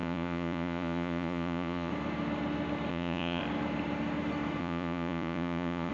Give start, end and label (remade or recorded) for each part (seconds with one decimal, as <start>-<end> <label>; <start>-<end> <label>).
0.0-1.9 remade; 1.9-2.9 recorded; 2.9-3.4 remade; 3.4-4.6 recorded; 4.6-5.9 remade